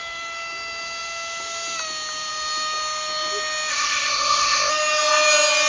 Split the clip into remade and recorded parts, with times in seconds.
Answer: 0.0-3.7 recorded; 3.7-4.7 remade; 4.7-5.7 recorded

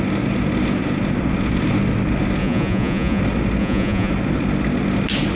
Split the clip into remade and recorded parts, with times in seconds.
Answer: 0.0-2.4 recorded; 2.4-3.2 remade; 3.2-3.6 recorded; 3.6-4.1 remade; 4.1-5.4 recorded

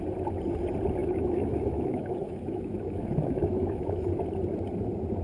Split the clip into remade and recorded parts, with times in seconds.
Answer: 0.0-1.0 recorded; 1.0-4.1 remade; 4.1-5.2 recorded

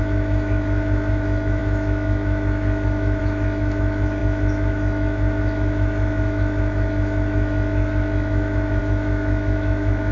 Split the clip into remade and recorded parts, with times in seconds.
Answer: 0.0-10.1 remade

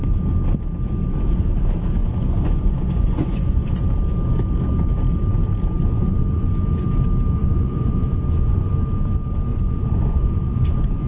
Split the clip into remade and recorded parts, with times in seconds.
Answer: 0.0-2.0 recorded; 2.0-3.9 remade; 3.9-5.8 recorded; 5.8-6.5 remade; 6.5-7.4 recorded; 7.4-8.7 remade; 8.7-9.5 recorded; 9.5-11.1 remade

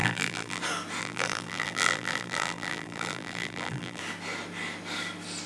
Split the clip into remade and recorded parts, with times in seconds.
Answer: 0.0-0.6 remade; 0.6-1.0 recorded; 1.0-4.0 remade; 4.0-5.5 recorded

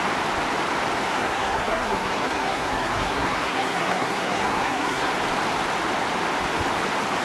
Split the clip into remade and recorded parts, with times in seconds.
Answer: 0.0-1.1 recorded; 1.1-5.1 remade; 5.1-7.2 recorded

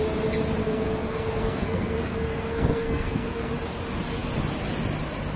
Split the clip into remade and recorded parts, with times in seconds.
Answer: 0.0-0.6 recorded; 0.6-3.5 remade; 3.5-5.4 recorded